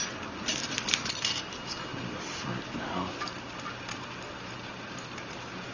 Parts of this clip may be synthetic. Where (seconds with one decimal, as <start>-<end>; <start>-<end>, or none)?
4.7-5.7